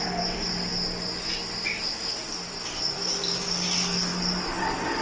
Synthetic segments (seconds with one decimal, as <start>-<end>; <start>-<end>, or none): none